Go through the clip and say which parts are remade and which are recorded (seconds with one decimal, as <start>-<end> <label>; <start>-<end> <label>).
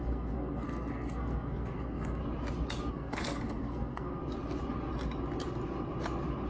0.0-2.2 remade; 2.2-2.9 recorded; 2.9-4.2 remade; 4.2-6.5 recorded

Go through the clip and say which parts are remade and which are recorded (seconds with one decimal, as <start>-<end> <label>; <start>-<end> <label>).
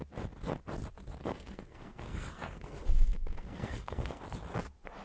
0.0-1.2 recorded; 1.2-4.2 remade; 4.2-5.0 recorded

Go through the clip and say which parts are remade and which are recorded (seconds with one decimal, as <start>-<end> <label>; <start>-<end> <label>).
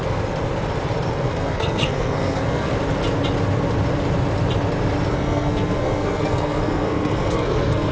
0.0-1.1 recorded; 1.1-2.7 remade; 2.7-5.1 recorded; 5.1-7.9 remade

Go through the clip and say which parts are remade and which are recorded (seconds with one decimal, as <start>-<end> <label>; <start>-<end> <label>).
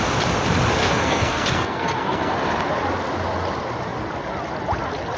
0.0-0.8 recorded; 0.8-2.3 remade; 2.3-5.2 recorded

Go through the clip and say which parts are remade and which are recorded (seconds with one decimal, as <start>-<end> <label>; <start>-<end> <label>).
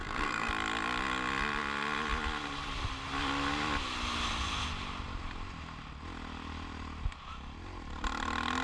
0.0-0.5 remade; 0.5-8.6 recorded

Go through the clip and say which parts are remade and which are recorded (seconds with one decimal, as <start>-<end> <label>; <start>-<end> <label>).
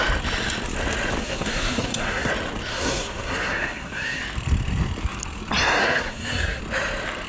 0.0-1.2 recorded; 1.2-2.3 remade; 2.3-2.7 recorded; 2.7-4.2 remade; 4.2-5.8 recorded; 5.8-6.6 remade; 6.6-7.3 recorded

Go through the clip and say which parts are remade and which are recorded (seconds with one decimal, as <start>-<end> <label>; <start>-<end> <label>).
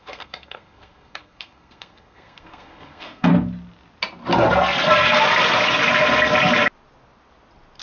0.0-3.3 remade; 3.3-7.8 recorded